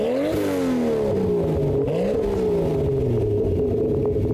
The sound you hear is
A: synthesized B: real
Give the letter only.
B